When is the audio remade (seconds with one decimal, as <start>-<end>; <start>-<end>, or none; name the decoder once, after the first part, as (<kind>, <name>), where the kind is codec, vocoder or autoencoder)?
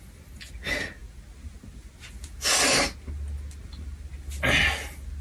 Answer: none